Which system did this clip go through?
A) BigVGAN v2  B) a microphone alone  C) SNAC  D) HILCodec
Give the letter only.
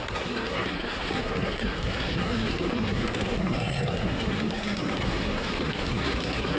C